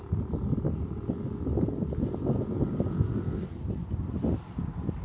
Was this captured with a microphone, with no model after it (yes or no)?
yes